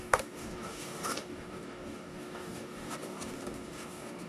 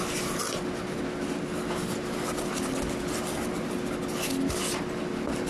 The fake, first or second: first